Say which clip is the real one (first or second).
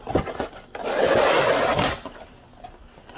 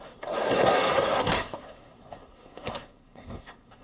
first